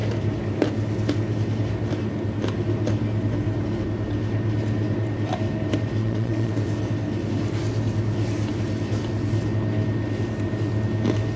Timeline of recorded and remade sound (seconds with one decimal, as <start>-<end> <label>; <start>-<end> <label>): 0.0-6.0 recorded; 6.0-6.5 remade; 6.5-11.4 recorded